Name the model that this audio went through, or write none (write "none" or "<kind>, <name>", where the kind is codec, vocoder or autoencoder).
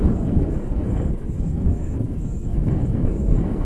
codec, SNAC